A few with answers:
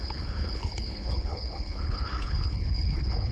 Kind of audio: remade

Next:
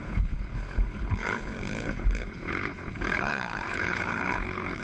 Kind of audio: remade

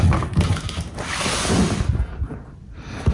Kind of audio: recorded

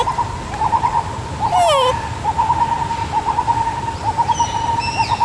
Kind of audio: recorded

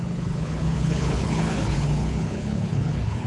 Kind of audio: remade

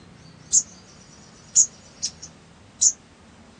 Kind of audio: recorded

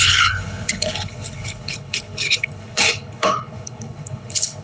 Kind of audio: remade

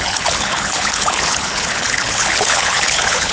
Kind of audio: remade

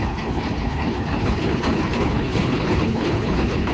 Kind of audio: remade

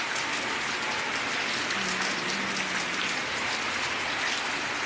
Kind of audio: recorded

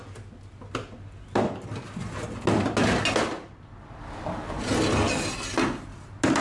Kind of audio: recorded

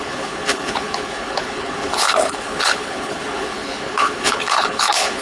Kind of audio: remade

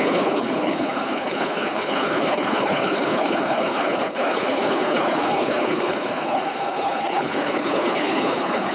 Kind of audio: remade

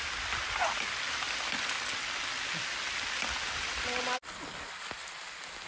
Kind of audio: recorded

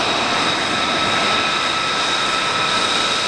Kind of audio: recorded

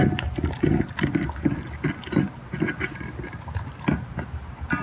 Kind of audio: recorded